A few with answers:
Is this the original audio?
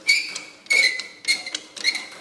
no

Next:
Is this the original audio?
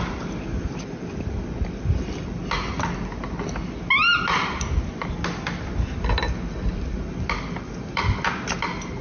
yes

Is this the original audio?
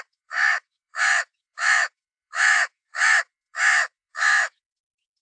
no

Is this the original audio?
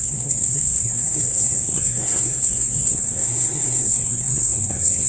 no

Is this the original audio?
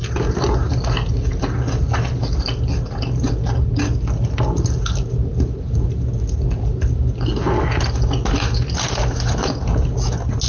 yes